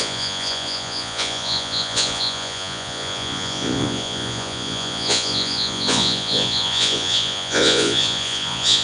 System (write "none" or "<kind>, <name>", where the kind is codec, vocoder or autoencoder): vocoder, Vocos